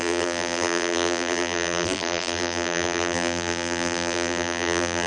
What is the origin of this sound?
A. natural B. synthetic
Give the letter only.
B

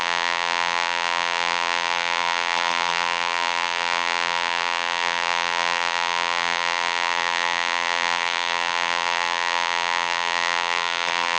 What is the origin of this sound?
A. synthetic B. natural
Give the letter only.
A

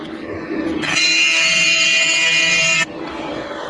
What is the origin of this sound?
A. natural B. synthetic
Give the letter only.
B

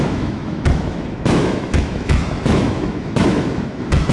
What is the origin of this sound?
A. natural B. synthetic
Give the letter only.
B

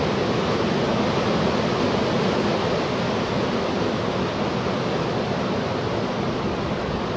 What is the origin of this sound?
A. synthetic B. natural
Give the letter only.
B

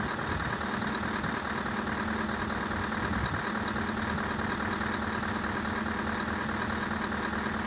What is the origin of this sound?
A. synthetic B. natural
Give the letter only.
B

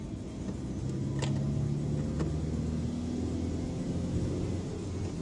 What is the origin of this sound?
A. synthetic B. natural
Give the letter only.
B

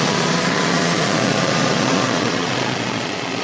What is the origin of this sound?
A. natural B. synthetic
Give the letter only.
B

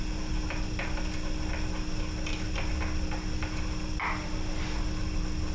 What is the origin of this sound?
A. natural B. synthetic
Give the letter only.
A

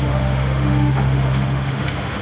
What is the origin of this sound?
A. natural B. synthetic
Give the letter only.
B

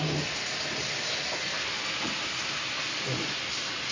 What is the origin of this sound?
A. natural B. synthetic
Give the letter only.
A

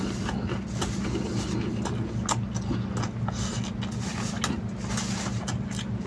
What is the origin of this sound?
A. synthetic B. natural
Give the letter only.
B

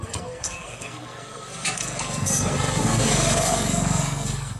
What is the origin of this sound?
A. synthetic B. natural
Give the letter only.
A